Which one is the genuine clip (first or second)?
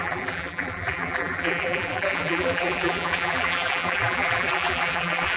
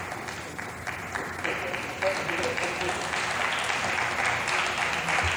second